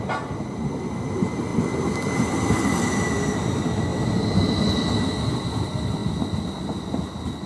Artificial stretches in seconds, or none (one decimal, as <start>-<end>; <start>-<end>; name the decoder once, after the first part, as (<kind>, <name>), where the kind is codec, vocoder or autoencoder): 3.9-4.4 (vocoder, BigVGAN v2); 6.0-6.6